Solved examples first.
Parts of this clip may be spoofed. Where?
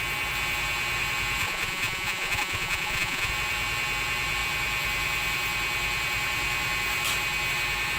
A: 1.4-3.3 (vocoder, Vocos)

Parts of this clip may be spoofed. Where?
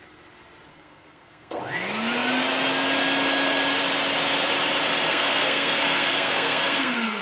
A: 0.7-1.6 (codec, SNAC); 5.1-7.2